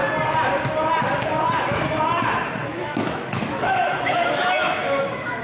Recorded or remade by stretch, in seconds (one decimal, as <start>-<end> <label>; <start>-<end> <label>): 0.0-2.6 recorded; 2.6-5.4 remade